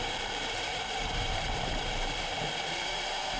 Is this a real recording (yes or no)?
no